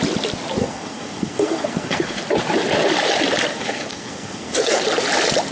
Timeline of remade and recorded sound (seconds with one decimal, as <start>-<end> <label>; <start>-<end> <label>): 0.0-0.6 recorded; 0.6-2.2 remade; 2.2-3.5 recorded; 3.5-4.8 remade; 4.8-5.5 recorded